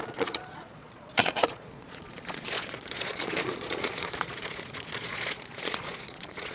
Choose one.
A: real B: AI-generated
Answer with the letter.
B